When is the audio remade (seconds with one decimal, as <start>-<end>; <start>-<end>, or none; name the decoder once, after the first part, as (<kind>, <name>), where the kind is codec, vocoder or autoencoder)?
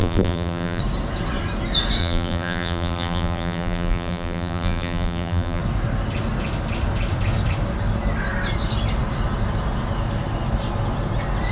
0.0-0.8 (vocoder, BigVGAN v2); 2.0-5.6